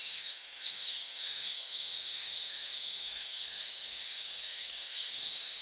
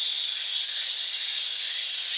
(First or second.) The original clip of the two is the second